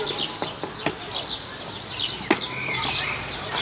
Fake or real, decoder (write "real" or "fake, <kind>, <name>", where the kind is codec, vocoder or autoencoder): real